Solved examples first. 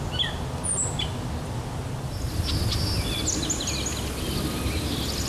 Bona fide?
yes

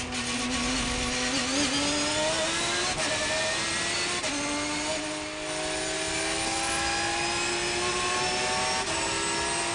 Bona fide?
yes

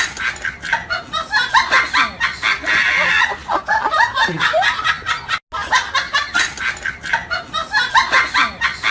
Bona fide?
yes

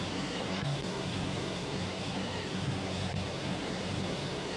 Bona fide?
no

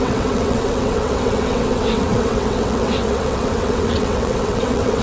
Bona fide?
no